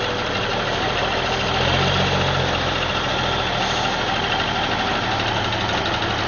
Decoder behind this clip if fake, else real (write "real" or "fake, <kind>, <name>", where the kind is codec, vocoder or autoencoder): real